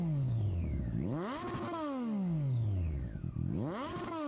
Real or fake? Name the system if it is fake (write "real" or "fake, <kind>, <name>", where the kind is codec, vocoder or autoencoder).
fake, codec, DAC